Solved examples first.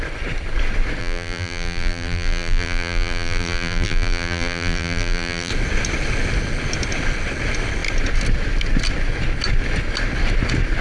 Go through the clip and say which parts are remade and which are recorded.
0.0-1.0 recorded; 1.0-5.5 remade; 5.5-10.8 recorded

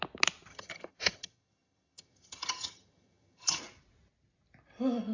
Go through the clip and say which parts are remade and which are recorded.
0.0-0.5 recorded; 0.5-3.6 remade; 3.6-5.1 recorded